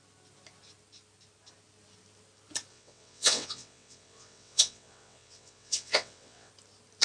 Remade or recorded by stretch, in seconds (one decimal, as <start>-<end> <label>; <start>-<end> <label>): 0.0-2.7 recorded; 2.7-6.5 remade; 6.5-7.0 recorded